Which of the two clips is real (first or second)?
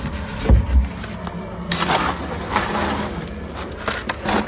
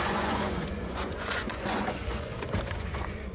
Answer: first